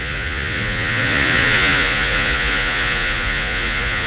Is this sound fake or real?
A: fake